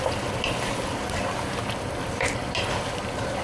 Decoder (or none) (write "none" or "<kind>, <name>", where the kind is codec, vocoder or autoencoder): none